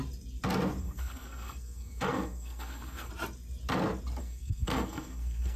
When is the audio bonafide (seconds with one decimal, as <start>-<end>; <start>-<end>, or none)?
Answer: 0.0-0.8; 3.1-4.2